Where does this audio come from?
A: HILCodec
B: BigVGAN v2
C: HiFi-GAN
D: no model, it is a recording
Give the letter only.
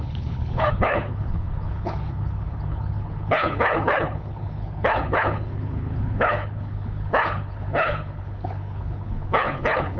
A